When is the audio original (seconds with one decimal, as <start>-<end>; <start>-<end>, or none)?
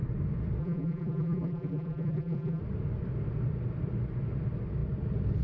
0.0-0.6; 2.6-5.4